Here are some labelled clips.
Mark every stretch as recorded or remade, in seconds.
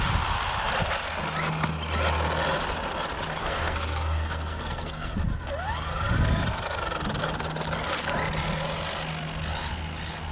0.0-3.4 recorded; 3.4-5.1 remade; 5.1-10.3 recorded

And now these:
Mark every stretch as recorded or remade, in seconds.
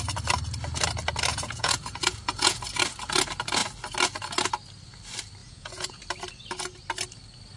0.0-1.3 recorded; 1.3-2.6 remade; 2.6-5.4 recorded; 5.4-6.0 remade; 6.0-7.6 recorded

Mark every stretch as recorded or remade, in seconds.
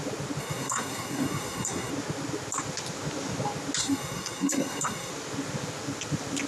0.0-0.4 recorded; 0.4-1.9 remade; 1.9-3.8 recorded; 3.8-5.1 remade; 5.1-6.5 recorded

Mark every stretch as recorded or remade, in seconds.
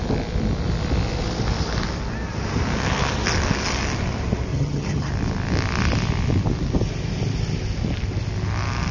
0.0-4.5 recorded; 4.5-5.1 remade; 5.1-8.9 recorded